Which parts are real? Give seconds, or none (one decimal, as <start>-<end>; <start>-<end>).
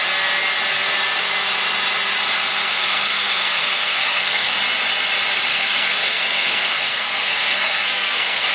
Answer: 0.0-2.6; 4.6-5.5